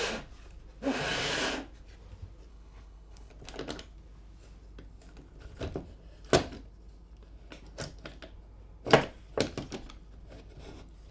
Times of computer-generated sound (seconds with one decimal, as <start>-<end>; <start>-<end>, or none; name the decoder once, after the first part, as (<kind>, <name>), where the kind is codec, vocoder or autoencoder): 2.5-3.3 (codec, HILCodec)